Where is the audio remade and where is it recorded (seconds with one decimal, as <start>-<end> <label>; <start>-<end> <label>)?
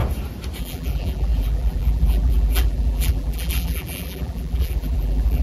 0.0-0.6 recorded; 0.6-5.4 remade